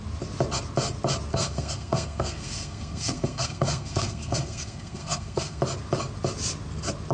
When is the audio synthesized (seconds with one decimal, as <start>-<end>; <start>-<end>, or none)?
1.3-5.6